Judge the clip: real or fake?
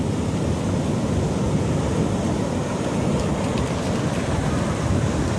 real